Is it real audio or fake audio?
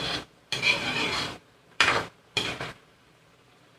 fake